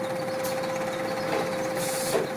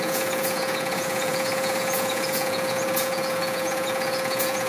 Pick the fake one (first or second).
second